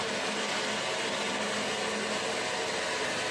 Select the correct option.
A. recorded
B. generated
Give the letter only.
A